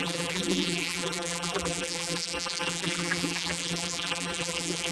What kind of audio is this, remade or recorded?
remade